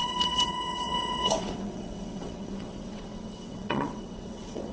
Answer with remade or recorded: remade